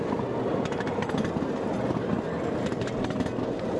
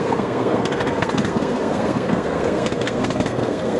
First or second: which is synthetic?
second